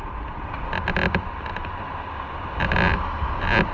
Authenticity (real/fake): real